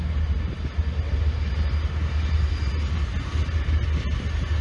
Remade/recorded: recorded